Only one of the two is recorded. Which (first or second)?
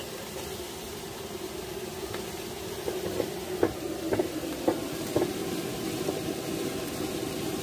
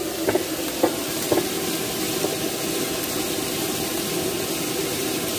second